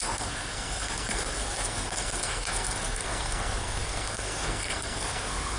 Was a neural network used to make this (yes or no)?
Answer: yes